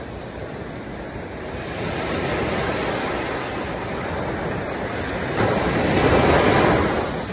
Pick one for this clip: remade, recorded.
recorded